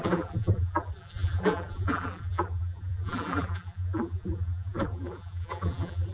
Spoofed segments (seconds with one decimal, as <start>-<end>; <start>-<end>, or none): 0.0-6.1